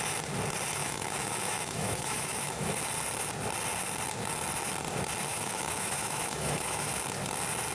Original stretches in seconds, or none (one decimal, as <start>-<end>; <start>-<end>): 0.0-0.8; 2.7-5.3; 6.9-7.7